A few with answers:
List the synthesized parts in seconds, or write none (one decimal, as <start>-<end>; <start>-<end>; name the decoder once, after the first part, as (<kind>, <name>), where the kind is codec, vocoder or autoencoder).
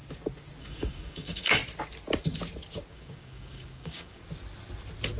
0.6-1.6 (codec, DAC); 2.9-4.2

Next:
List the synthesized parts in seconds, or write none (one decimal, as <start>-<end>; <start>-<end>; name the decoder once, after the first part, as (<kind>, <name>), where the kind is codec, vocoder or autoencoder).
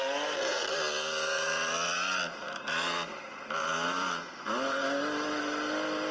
none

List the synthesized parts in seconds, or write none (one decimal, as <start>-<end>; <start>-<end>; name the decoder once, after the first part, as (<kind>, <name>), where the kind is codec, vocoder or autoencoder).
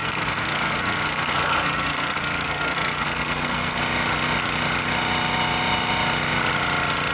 0.0-3.8 (codec, SNAC)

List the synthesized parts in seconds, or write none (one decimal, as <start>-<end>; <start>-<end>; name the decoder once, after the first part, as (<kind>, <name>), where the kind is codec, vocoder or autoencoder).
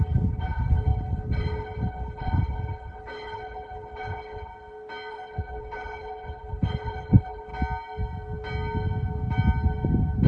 0.0-4.5 (codec, HILCodec); 5.1-7.5